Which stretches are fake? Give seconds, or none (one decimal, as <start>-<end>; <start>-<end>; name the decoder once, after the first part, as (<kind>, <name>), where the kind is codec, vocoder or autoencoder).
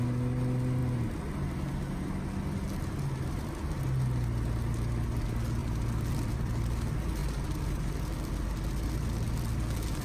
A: 5.6-6.7 (vocoder, BigVGAN v2)